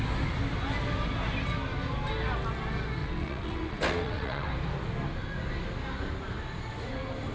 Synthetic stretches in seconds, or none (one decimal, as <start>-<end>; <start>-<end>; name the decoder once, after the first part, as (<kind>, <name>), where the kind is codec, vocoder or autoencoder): 3.0-4.5 (vocoder, WaveNeXt)

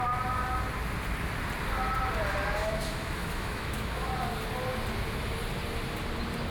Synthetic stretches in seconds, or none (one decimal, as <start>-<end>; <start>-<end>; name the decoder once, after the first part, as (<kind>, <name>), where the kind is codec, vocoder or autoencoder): 2.6-4.1 (autoencoder, DAC-VAE)